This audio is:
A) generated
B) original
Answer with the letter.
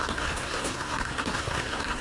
A